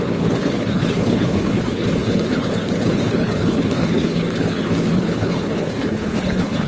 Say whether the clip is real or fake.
fake